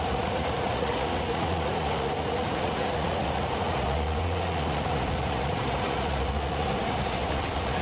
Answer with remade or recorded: remade